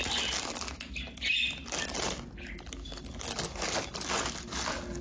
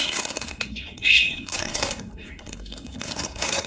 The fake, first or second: second